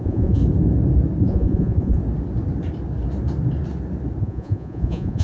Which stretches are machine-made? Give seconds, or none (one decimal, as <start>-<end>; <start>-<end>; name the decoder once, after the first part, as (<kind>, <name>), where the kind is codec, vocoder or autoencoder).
0.0-0.4 (vocoder, Vocos); 1.2-2.0; 4.2-5.2